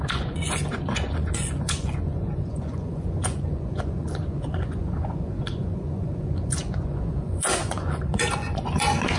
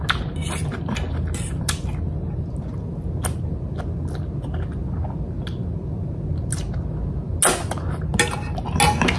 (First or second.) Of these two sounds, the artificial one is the first